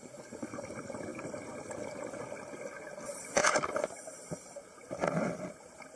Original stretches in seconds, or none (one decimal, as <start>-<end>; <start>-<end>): 0.0-6.0